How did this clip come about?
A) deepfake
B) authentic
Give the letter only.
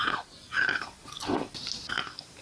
B